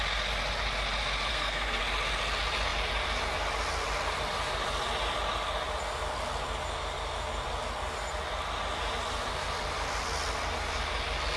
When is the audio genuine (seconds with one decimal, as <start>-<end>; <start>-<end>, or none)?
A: 0.0-1.3; 1.8-11.4